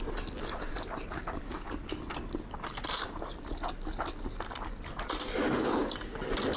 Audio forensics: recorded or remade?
recorded